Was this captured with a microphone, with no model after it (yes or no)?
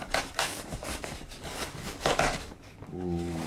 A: no